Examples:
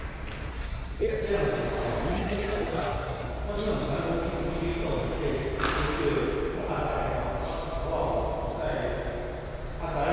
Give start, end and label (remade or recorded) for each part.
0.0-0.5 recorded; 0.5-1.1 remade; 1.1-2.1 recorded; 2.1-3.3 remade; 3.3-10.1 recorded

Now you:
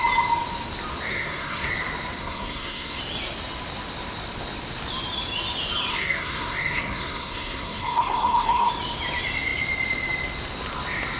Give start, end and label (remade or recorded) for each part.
0.0-1.1 recorded; 1.1-1.7 remade; 1.7-2.2 recorded; 2.2-3.0 remade; 3.0-5.9 recorded; 5.9-8.7 remade; 8.7-11.2 recorded